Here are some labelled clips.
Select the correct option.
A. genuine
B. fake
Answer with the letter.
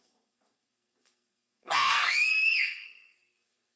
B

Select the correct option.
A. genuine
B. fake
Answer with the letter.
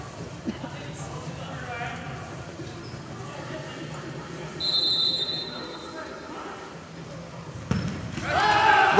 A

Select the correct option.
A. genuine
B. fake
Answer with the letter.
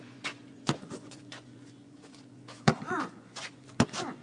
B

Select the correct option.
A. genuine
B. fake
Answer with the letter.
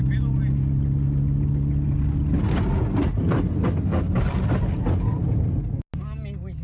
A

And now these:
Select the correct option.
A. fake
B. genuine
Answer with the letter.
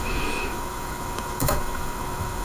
A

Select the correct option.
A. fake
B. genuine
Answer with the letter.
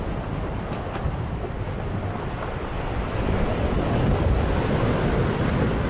B